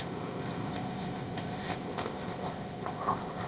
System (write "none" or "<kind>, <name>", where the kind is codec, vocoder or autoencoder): codec, ZipCodec